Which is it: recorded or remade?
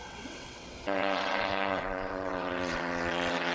remade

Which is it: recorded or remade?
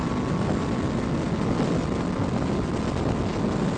recorded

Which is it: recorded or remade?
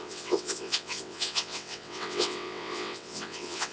remade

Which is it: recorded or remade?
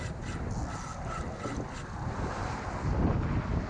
recorded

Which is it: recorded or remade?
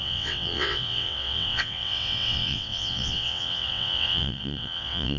remade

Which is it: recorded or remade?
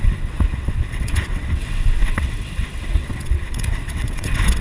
remade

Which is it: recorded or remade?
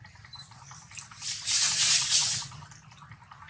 recorded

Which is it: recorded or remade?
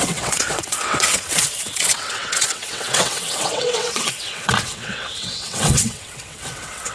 remade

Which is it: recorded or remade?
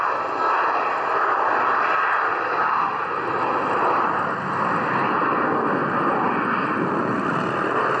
recorded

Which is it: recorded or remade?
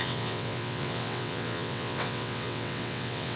remade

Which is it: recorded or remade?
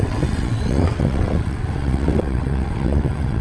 remade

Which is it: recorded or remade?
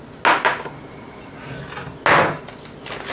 recorded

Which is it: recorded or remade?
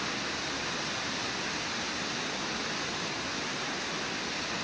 recorded